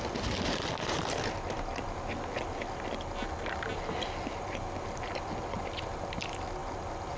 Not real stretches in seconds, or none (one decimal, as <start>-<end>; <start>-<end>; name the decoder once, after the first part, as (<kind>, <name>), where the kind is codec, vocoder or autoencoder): none